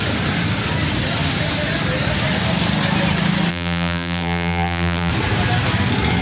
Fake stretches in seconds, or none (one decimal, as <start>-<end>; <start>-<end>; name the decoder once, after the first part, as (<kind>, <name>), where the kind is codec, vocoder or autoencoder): 3.5-5.1 (vocoder, BigVGAN v2)